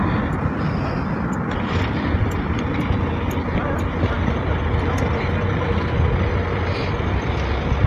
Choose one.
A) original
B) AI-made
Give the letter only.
A